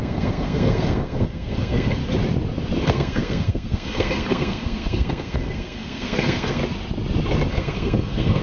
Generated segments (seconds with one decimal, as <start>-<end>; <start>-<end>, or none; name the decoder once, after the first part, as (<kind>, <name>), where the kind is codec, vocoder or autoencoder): 0.0-2.0 (codec, SNAC); 2.8-6.6; 7.5-8.4